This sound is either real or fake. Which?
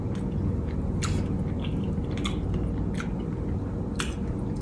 real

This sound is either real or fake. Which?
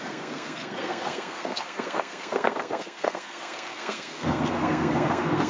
fake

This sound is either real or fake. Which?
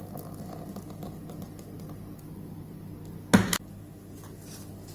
real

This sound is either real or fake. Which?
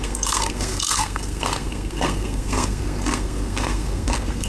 fake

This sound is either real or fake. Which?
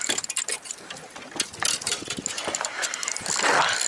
real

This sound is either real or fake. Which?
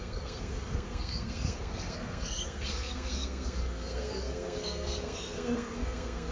fake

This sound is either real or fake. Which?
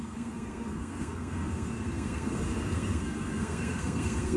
fake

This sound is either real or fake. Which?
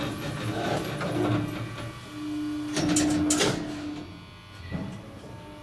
real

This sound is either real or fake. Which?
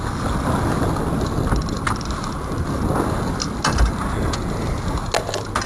real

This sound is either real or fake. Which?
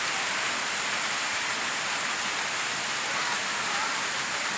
real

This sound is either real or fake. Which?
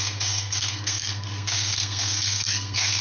fake